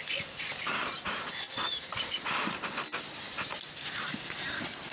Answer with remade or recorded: recorded